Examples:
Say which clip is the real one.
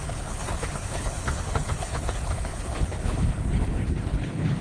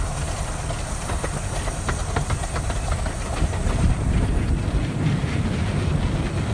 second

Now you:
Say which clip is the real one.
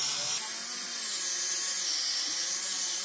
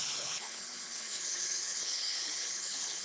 first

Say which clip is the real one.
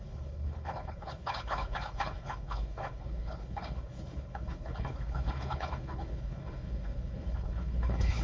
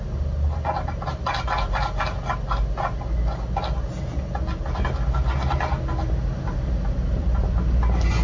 second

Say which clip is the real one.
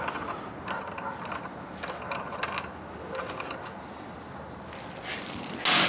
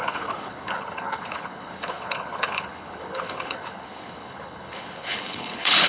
first